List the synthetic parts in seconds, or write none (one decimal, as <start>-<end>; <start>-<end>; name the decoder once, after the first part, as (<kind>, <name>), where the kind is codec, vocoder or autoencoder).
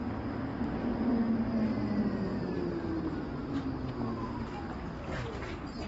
none